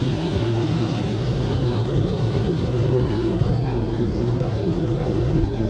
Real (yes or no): no